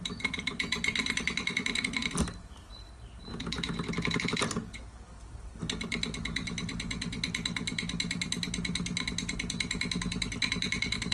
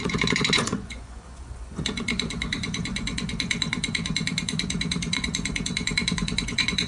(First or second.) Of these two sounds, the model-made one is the second